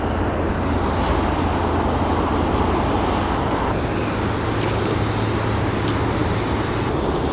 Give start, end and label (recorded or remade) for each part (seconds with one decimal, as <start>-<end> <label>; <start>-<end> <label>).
0.0-7.3 recorded